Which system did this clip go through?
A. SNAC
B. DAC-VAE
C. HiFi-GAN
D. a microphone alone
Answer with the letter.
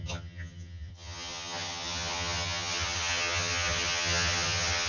C